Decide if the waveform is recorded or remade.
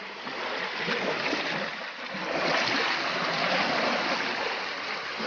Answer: recorded